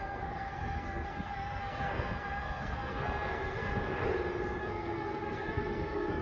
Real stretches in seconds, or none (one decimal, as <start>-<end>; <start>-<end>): 3.7-4.6